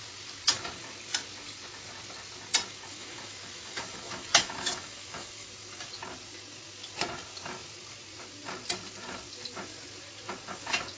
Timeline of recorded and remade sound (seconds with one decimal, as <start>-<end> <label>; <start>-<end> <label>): 0.0-2.9 recorded; 2.9-5.5 remade; 5.5-11.0 recorded